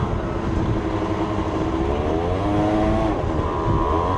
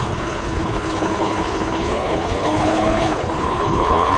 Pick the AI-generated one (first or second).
second